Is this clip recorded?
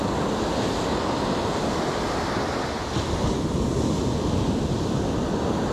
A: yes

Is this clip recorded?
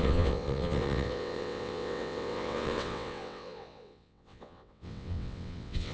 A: no